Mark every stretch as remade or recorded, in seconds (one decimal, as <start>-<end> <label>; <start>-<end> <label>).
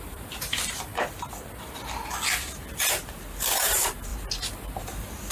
0.0-0.9 remade; 0.9-3.4 recorded; 3.4-4.1 remade; 4.1-5.3 recorded